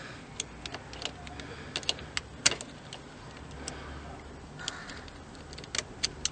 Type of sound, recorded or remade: recorded